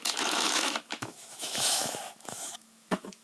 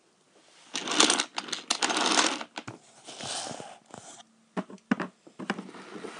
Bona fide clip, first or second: second